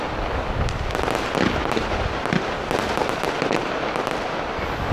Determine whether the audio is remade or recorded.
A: recorded